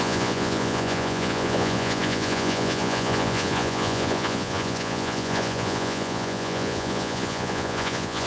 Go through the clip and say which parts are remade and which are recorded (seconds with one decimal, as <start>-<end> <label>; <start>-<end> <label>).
0.0-8.3 remade